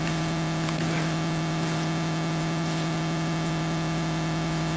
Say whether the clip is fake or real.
real